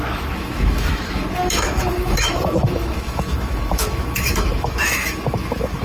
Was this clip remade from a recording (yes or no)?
yes